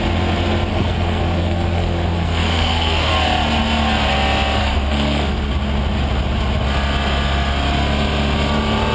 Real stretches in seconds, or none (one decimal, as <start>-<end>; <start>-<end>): 0.0-0.7; 3.1-4.6; 5.5-8.9